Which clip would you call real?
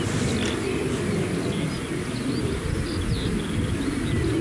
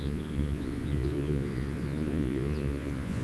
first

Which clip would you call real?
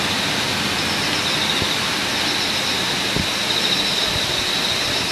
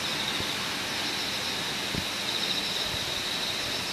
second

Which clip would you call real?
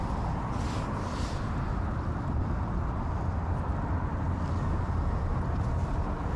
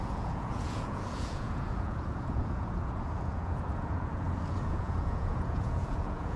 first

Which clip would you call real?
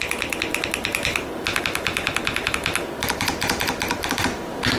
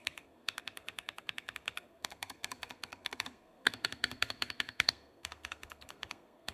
first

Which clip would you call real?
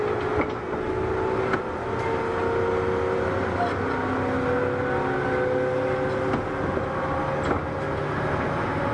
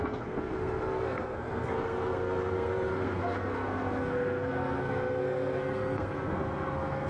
first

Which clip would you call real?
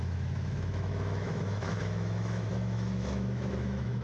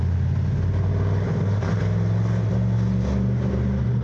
second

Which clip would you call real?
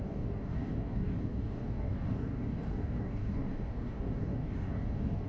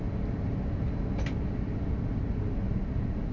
second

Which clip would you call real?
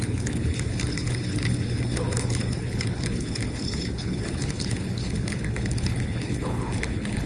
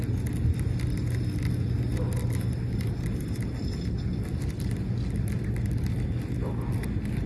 second